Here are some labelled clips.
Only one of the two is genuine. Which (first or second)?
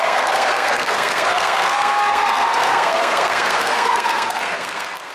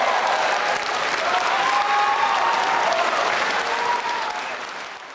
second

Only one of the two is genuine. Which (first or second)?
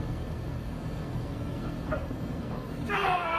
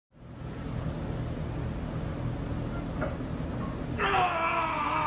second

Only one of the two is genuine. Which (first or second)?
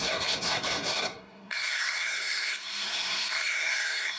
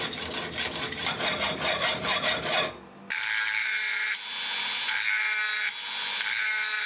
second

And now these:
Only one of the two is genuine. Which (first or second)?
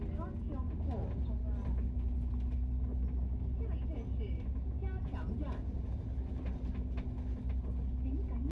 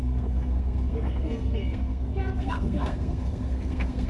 first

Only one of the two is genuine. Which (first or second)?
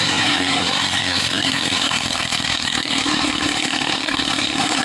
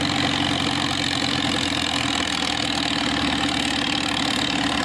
second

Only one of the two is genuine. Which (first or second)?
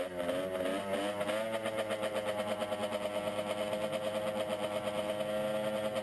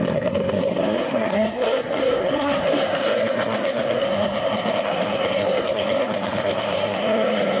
first